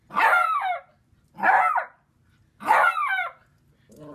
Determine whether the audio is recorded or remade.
recorded